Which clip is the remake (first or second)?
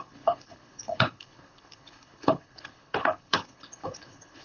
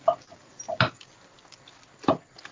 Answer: first